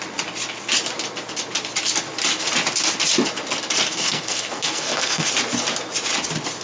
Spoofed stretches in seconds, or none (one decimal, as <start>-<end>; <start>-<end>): 3.9-5.3